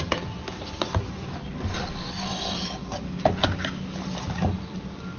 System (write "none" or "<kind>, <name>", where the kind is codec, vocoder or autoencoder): none